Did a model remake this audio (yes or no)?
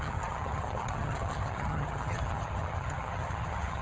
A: yes